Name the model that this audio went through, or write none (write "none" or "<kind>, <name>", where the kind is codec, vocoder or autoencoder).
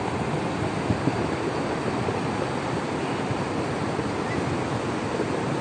none